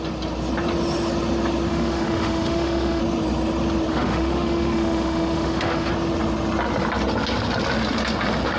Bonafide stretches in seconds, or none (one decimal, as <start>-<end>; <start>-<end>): 0.0-1.7; 3.0-3.9; 5.9-8.6